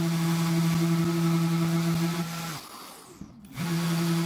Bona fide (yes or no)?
yes